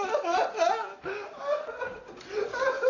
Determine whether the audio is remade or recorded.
recorded